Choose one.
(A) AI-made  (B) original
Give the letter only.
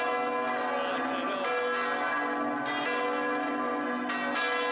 B